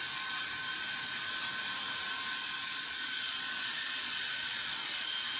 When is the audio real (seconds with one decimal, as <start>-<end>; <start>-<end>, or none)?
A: 0.0-2.7; 4.9-5.4

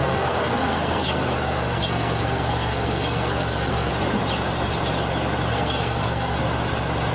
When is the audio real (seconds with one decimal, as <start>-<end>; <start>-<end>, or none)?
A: 3.9-5.5; 6.4-7.1

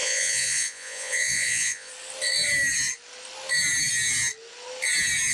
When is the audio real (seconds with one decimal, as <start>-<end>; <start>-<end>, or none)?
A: 1.9-5.3